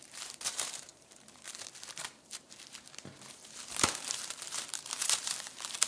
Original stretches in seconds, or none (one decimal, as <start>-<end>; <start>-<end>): none